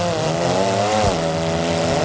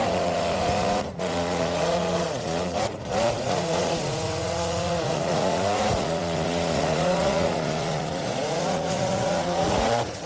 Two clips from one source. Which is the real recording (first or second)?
first